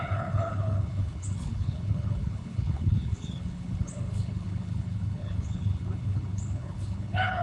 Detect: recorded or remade remade